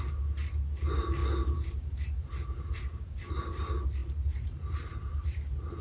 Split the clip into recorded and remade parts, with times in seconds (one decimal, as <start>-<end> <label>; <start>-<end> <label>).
0.0-1.2 recorded; 1.2-3.5 remade; 3.5-4.0 recorded; 4.0-5.8 remade